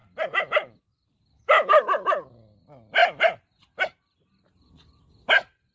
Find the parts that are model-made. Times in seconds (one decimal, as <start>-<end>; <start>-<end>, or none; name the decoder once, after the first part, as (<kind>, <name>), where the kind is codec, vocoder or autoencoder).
0.0-1.7 (vocoder, BigVGAN v2); 3.0-5.1